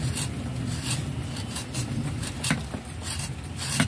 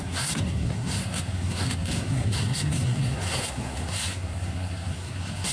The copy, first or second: second